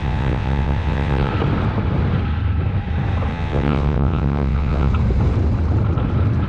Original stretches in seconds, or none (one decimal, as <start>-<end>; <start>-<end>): 1.3-3.3; 4.9-6.5